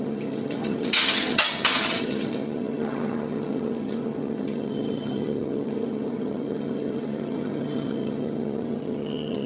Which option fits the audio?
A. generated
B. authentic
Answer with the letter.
A